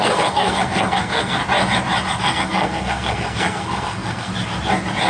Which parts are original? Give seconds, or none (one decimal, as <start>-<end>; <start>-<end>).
1.4-2.2; 4.3-5.1